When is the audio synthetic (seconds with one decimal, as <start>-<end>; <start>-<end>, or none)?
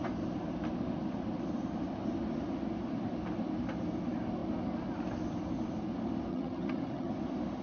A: 6.3-7.1